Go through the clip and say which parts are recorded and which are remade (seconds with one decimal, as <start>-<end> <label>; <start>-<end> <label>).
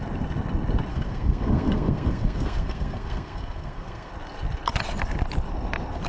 0.0-0.9 recorded; 0.9-4.1 remade; 4.1-6.1 recorded